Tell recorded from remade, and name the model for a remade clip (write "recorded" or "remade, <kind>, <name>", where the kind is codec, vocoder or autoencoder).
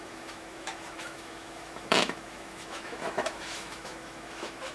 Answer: remade, autoencoder, DAC-VAE